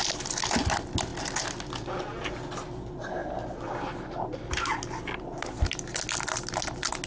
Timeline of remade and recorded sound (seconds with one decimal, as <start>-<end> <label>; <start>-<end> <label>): 0.0-7.1 recorded